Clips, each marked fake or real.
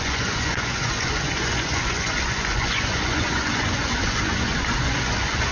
fake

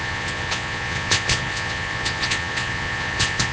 fake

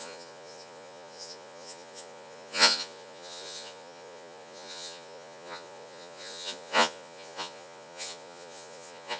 fake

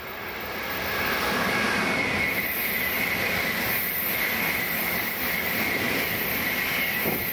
real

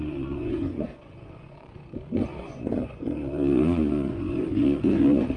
fake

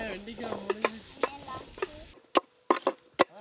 real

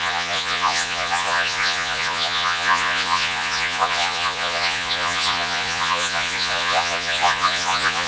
fake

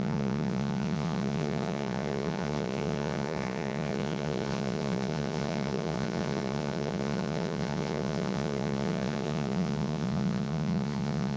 fake